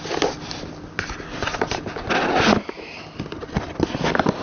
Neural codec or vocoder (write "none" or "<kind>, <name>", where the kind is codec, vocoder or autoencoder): none